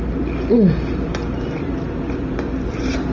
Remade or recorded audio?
recorded